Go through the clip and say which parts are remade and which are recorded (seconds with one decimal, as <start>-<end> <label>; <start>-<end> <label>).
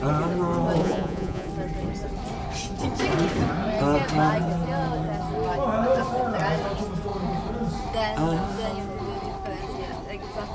0.0-0.8 recorded; 0.8-1.5 remade; 1.5-10.5 recorded